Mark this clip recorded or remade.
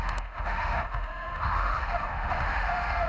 remade